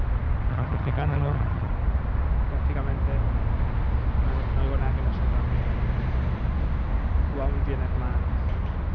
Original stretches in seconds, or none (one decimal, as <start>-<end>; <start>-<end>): 0.0-0.5; 1.7-8.9

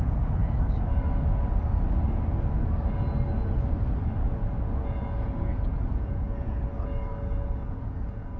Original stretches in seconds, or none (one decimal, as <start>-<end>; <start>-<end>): 0.4-4.3